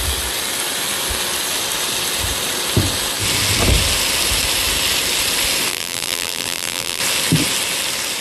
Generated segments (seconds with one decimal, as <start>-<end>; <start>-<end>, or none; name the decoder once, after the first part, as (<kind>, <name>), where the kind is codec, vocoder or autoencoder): 5.7-7.0 (vocoder, BigVGAN v2)